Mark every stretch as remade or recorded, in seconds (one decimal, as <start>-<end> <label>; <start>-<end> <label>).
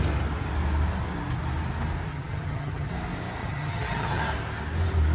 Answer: 0.0-2.1 recorded; 2.1-2.9 remade; 2.9-3.4 recorded; 3.4-4.2 remade; 4.2-5.1 recorded